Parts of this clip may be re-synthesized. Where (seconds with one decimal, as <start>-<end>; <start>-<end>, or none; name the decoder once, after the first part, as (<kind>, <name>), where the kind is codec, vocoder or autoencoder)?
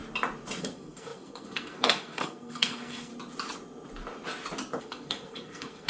0.6-3.1 (codec, SNAC); 4.8-5.9